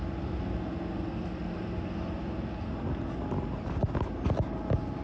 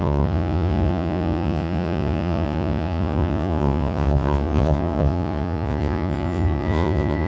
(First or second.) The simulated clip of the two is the second